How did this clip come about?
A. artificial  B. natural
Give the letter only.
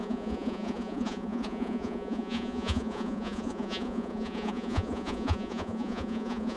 A